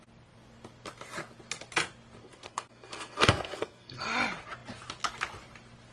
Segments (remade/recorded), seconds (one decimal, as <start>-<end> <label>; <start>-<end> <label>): 0.0-2.2 recorded; 2.2-4.0 remade; 4.0-5.9 recorded